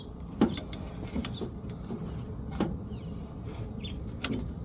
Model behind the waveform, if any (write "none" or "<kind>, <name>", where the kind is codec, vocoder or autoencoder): none